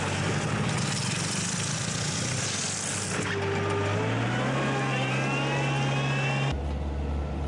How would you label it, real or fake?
real